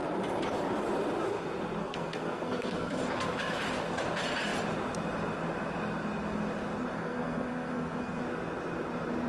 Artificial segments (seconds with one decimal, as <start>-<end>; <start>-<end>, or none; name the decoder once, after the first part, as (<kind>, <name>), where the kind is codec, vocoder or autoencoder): 1.8-3.0 (codec, SNAC); 6.9-8.2